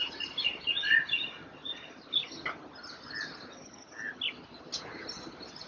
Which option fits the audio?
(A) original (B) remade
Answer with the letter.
A